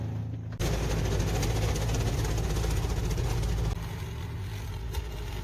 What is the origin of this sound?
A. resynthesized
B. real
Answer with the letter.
B